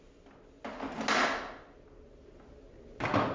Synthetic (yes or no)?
no